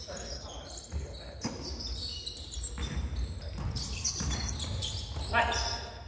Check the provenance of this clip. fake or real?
real